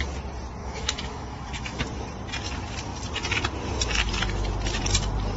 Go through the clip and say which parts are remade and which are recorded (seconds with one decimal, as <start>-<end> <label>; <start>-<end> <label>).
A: 0.0-0.6 recorded; 0.6-1.8 remade; 1.8-5.4 recorded